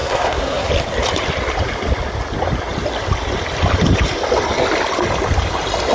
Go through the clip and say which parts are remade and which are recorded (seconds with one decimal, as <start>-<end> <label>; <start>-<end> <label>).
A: 0.0-0.7 remade; 0.7-5.9 recorded